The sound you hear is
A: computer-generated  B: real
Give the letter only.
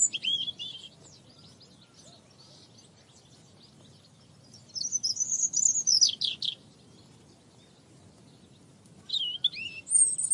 B